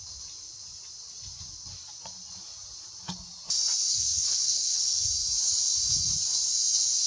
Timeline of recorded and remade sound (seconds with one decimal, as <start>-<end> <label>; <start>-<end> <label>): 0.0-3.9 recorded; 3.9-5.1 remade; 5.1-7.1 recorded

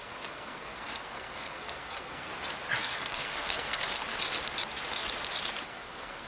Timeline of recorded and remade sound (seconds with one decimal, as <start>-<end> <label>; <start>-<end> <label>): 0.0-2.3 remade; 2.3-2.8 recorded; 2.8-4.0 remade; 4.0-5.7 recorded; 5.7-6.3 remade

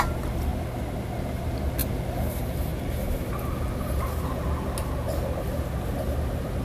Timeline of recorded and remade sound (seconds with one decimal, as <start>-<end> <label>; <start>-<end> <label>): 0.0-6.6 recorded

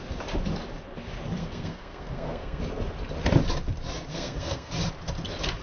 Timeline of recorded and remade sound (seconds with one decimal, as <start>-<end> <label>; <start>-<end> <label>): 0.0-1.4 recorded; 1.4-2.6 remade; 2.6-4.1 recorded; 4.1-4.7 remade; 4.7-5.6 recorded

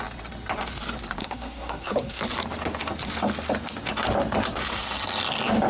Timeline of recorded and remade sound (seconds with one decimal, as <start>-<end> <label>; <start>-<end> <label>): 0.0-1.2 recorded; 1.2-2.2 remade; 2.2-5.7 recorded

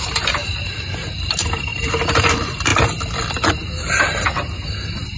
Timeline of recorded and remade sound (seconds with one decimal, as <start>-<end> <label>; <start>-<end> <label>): 0.0-5.2 recorded

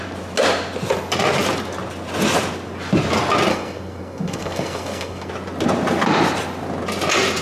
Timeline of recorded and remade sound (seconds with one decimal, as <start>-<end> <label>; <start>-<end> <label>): 0.0-3.5 recorded; 3.5-5.3 remade; 5.3-7.4 recorded

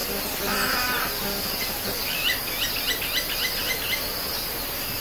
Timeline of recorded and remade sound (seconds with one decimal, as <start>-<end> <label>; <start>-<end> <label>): 0.0-5.0 recorded